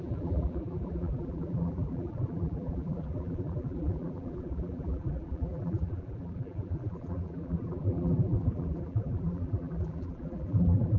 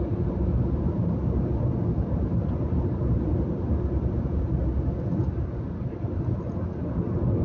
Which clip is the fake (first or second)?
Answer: first